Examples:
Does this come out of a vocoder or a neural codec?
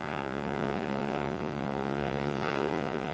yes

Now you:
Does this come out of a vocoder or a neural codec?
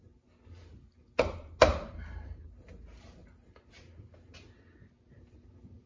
no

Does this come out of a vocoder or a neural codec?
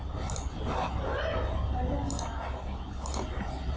no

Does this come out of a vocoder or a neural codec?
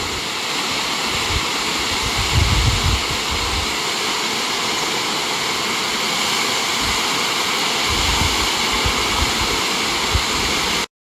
no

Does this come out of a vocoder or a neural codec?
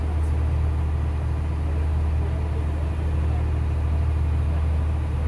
no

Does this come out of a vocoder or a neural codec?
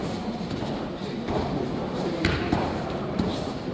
yes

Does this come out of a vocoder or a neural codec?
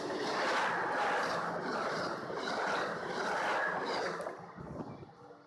no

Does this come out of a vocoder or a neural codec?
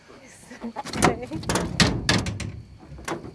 no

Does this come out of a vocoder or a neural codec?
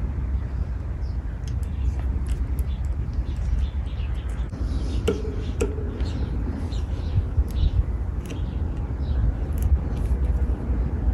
no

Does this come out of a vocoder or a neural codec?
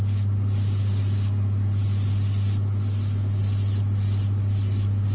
no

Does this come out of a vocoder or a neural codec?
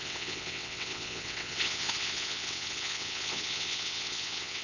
yes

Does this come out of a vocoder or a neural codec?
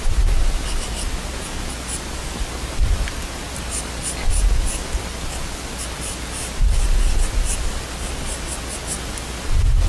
no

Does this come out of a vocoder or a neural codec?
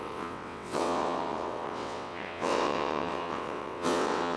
yes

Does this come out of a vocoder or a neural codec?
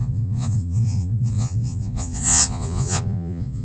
yes